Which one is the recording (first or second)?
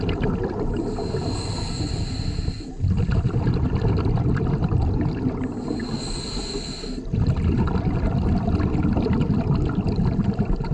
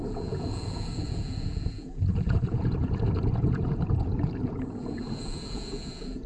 first